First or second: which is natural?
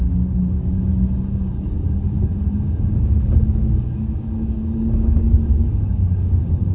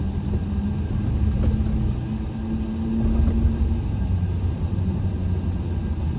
second